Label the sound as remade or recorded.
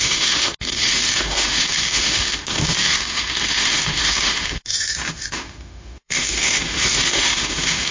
remade